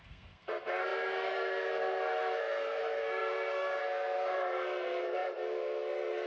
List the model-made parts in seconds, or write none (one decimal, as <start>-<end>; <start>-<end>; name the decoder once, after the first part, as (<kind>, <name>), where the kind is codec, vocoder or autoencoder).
0.0-6.3 (codec, SNAC)